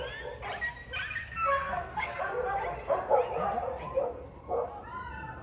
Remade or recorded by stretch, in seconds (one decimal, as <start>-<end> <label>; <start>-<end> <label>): 0.0-1.2 recorded; 1.2-2.2 remade; 2.2-5.4 recorded